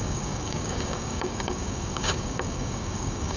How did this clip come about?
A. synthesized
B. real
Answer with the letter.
A